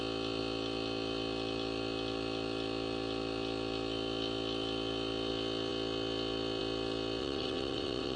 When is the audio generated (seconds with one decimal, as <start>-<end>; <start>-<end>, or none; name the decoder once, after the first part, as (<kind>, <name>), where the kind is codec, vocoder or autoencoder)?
7.2-8.2 (vocoder, WaveNeXt)